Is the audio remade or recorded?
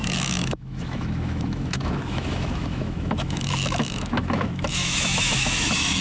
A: remade